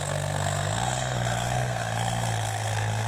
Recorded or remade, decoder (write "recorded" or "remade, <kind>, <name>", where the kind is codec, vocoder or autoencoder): remade, codec, SNAC